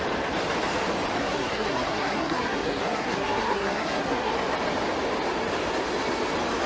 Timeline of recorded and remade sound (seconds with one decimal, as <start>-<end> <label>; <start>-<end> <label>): 0.0-1.2 recorded; 1.2-4.3 remade; 4.3-6.7 recorded